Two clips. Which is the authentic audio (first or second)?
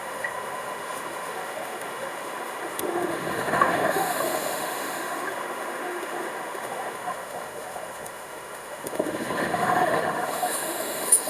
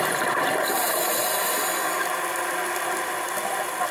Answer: second